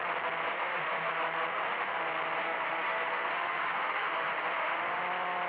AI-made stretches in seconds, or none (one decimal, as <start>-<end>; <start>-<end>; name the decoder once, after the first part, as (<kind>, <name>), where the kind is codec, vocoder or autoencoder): 0.5-1.1 (autoencoder, DAC-VAE); 1.5-2.0; 2.4-5.0